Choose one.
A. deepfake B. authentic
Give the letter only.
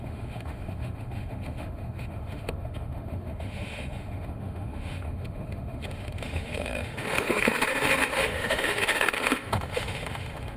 A